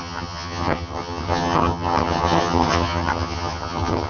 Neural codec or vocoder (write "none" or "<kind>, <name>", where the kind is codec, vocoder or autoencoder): vocoder, HiFi-GAN